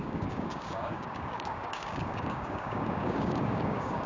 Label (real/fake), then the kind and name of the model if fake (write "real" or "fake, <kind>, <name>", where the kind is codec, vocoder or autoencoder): fake, codec, DAC